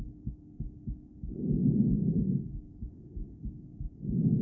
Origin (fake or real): real